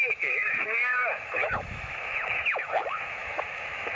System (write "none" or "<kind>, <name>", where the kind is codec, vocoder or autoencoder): autoencoder, DAC-VAE